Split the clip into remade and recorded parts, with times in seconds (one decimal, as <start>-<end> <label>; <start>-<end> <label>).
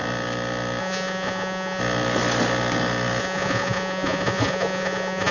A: 0.0-0.8 recorded; 0.8-1.8 remade; 1.8-3.2 recorded; 3.2-5.3 remade